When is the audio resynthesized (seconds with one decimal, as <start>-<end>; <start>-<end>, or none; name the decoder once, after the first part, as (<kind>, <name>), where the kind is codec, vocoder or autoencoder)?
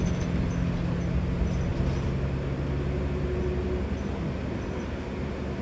none